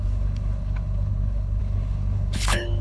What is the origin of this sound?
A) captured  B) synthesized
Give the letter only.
B